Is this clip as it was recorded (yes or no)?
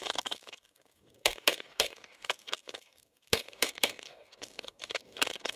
no